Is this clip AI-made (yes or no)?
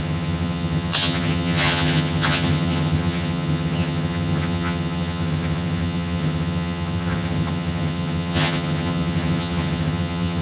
yes